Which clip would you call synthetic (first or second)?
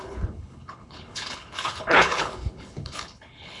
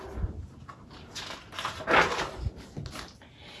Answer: first